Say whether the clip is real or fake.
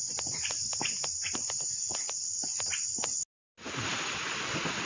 real